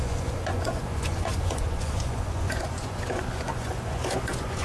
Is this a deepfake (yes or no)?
yes